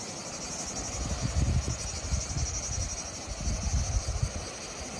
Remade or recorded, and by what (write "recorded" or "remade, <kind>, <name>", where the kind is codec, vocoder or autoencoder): recorded